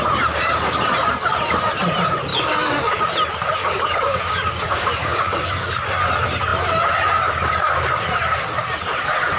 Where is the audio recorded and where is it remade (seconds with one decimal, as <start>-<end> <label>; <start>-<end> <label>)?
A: 0.0-2.3 recorded; 2.3-3.0 remade; 3.0-3.6 recorded; 3.6-5.7 remade; 5.7-9.4 recorded

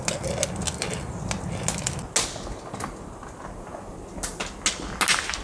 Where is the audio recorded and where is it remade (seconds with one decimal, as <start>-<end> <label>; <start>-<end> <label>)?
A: 0.0-5.4 recorded

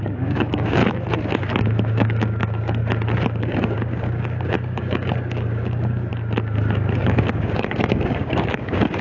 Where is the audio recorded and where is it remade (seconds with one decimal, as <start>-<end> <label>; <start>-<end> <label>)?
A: 0.0-0.8 remade; 0.8-1.6 recorded; 1.6-2.8 remade; 2.8-3.4 recorded; 3.4-6.1 remade; 6.1-7.0 recorded; 7.0-9.0 remade

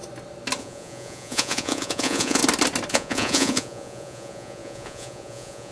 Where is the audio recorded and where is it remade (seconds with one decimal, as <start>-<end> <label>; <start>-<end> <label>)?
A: 0.0-0.6 recorded; 0.6-2.4 remade; 2.4-2.9 recorded; 2.9-5.7 remade

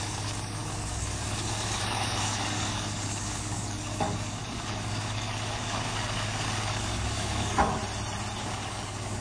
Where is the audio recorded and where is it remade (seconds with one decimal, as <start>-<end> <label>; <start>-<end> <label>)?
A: 0.0-7.8 remade; 7.8-8.4 recorded; 8.4-9.2 remade

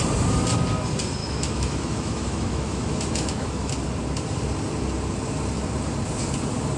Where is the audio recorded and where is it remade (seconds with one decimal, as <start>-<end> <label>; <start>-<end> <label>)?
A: 0.0-1.2 recorded; 1.2-3.7 remade; 3.7-6.8 recorded

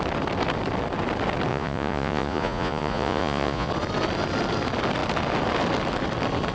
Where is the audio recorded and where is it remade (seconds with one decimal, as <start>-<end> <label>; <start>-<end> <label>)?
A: 0.0-1.5 recorded; 1.5-3.7 remade; 3.7-6.5 recorded